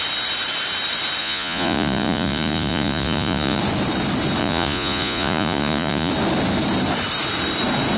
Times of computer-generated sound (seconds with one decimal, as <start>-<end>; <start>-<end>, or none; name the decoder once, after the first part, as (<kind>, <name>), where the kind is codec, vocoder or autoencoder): 1.2-3.6 (vocoder, Vocos); 4.4-6.1